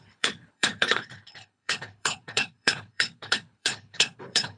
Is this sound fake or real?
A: fake